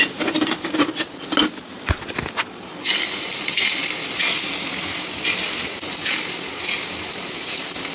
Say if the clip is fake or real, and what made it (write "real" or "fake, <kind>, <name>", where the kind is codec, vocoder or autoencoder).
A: real